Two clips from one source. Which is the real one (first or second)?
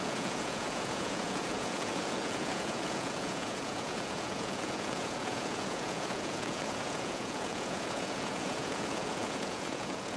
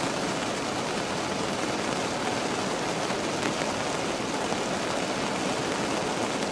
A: second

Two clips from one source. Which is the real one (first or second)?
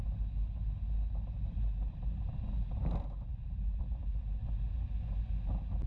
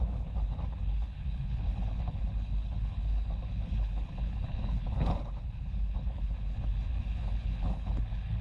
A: first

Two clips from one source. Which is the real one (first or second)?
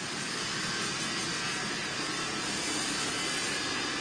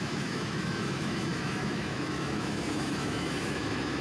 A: first